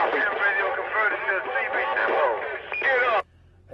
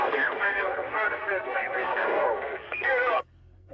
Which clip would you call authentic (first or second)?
first